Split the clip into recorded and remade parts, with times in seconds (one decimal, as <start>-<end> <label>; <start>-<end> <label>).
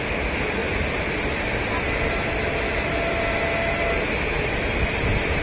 0.0-5.4 recorded